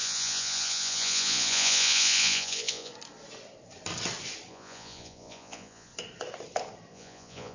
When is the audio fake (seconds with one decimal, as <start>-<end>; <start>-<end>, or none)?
0.0-2.9; 4.5-5.9; 6.9-7.5